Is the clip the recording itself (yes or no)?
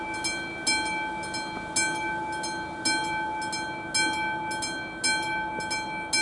yes